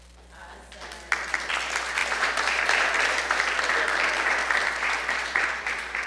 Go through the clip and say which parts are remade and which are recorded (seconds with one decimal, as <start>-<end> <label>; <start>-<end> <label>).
0.0-2.0 recorded; 2.0-3.4 remade; 3.4-4.4 recorded; 4.4-6.1 remade